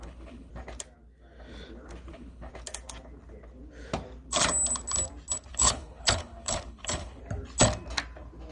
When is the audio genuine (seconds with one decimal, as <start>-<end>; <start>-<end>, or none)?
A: 0.5-2.1; 2.5-5.5; 7.2-8.5